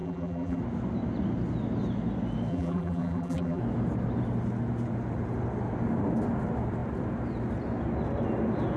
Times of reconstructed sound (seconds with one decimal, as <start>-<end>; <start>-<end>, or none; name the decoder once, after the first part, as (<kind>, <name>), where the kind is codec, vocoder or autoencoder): 0.0-0.6 (vocoder, BigVGAN v2); 2.5-3.6